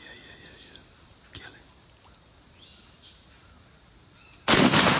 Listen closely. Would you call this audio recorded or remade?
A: recorded